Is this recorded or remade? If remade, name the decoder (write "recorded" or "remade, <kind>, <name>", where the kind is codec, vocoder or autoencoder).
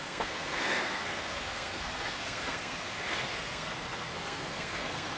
remade, codec, SNAC